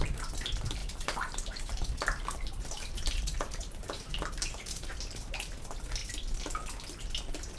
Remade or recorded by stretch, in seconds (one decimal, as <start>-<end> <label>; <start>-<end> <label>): 0.0-0.8 recorded; 0.8-5.0 remade; 5.0-7.6 recorded